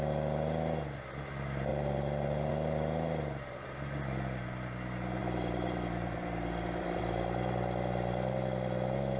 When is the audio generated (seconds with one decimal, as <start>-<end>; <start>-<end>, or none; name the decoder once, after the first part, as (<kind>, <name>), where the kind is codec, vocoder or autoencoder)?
1.7-2.5 (vocoder, BigVGAN v2); 5.2-7.0

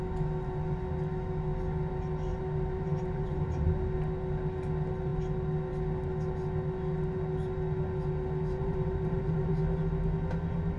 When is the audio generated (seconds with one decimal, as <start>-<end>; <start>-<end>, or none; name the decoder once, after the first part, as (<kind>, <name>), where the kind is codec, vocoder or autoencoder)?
2.3-3.7 (vocoder, BigVGAN v2); 8.6-9.5

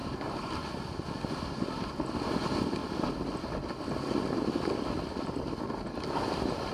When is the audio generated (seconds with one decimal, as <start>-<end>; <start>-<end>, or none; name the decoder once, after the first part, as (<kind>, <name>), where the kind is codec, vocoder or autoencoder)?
none

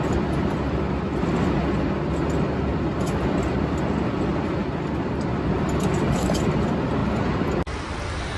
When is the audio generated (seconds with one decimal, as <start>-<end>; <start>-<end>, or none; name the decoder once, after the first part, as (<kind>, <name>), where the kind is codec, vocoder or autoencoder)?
none

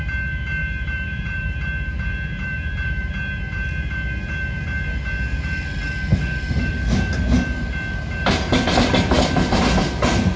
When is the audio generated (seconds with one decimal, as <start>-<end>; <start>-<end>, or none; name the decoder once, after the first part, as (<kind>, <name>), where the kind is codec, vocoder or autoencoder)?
0.6-1.5 (vocoder, BigVGAN v2); 2.3-3.1

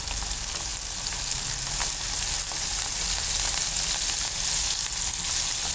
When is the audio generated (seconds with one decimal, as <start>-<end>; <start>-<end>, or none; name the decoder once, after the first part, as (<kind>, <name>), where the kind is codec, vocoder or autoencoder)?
none